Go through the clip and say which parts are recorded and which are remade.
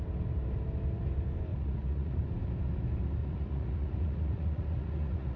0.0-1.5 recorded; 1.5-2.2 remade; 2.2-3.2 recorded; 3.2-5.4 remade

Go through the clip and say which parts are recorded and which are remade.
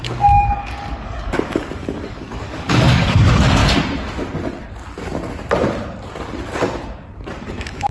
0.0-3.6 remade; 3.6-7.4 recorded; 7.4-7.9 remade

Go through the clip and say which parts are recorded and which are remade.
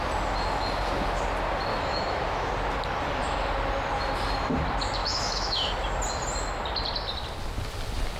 0.0-1.7 recorded; 1.7-2.5 remade; 2.5-5.0 recorded; 5.0-5.7 remade; 5.7-8.2 recorded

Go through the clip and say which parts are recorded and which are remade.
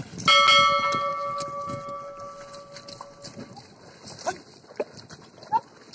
0.0-5.9 recorded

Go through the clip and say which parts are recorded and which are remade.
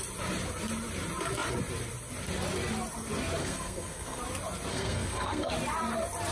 0.0-3.4 recorded; 3.4-4.2 remade; 4.2-4.7 recorded; 4.7-5.5 remade; 5.5-6.3 recorded